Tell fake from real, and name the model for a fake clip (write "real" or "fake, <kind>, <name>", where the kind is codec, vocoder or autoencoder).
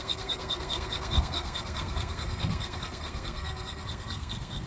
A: fake, codec, SNAC